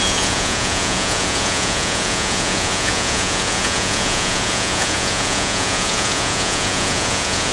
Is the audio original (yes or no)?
no